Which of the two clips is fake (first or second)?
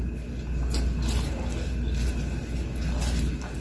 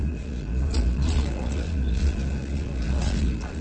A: second